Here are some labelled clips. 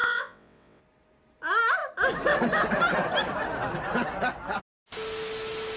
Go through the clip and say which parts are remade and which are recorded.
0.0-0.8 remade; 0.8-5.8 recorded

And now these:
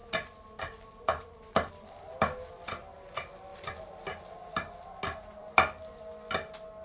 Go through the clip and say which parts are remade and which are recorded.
0.0-6.8 recorded

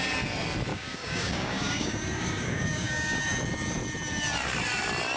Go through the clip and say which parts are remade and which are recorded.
0.0-0.7 recorded; 0.7-3.2 remade; 3.2-5.2 recorded

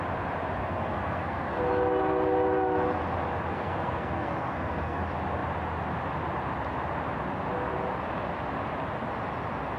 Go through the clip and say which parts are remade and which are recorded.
0.0-0.6 recorded; 0.6-1.6 remade; 1.6-3.5 recorded; 3.5-5.0 remade; 5.0-9.8 recorded

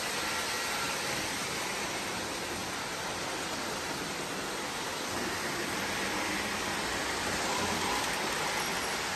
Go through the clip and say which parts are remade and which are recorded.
0.0-9.2 recorded